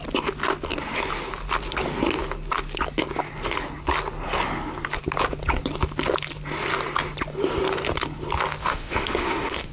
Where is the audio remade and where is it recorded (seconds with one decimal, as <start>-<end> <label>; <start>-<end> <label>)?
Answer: 0.0-8.6 recorded; 8.6-9.7 remade